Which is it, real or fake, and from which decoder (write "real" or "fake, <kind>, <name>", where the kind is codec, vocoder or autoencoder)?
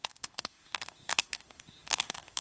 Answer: fake, autoencoder, DAC-VAE